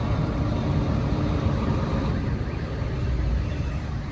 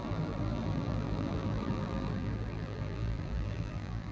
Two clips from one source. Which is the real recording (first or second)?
first